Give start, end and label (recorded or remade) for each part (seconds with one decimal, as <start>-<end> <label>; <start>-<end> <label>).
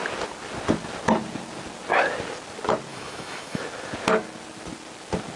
0.0-2.9 recorded; 2.9-3.6 remade; 3.6-5.4 recorded